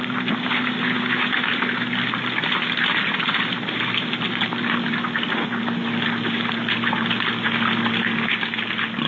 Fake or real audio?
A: real